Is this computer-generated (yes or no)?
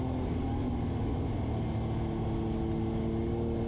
no